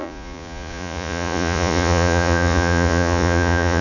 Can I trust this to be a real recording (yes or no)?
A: no